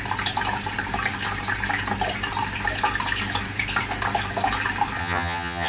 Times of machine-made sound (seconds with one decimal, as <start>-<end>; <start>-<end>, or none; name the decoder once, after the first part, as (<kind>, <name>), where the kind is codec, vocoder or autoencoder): 5.0-5.7 (vocoder, HiFi-GAN)